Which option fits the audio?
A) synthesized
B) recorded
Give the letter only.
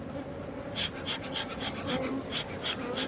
B